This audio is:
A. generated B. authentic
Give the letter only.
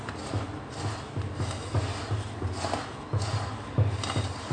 B